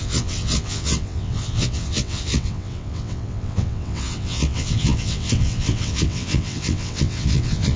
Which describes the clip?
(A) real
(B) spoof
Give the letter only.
B